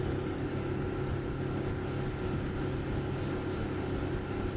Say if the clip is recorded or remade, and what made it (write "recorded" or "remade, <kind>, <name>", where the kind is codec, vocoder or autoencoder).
recorded